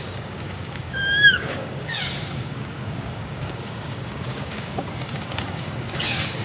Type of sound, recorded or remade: remade